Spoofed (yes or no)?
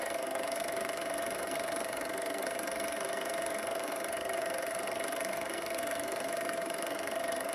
yes